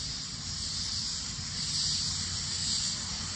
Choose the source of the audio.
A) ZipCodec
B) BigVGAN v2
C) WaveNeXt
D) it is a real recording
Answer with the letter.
D